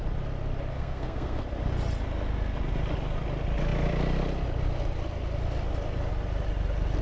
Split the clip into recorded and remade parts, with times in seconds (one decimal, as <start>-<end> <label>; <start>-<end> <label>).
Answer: 0.0-0.7 recorded; 0.7-1.4 remade; 1.4-7.0 recorded